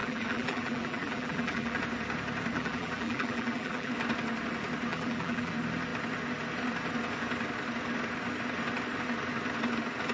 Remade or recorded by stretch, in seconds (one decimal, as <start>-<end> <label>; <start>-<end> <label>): 0.0-1.8 remade; 1.8-2.5 recorded; 2.5-3.9 remade; 3.9-4.9 recorded; 4.9-5.5 remade; 5.5-10.1 recorded